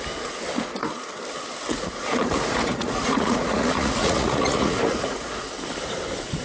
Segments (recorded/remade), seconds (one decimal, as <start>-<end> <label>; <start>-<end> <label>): 0.0-1.7 recorded; 1.7-5.5 remade; 5.5-6.4 recorded